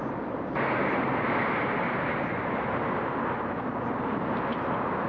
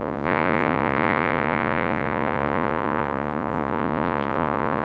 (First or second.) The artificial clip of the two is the second